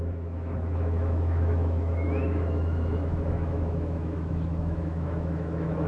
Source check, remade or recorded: remade